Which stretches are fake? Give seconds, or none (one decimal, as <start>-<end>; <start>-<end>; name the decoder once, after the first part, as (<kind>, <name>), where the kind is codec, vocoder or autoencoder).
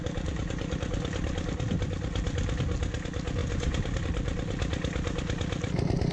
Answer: 0.0-0.8 (vocoder, BigVGAN v2); 3.4-4.0